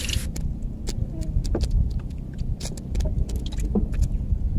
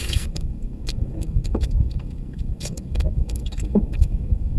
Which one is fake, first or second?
second